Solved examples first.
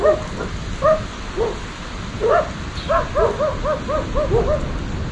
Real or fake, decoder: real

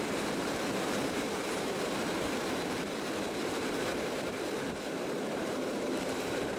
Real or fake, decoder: fake, vocoder, BigVGAN v2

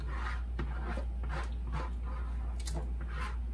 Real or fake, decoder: real